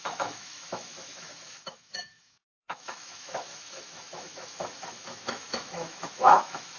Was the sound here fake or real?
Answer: fake